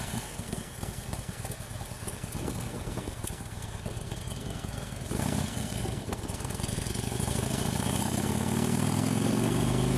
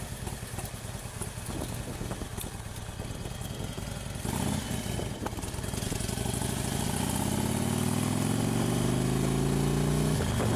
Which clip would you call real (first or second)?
second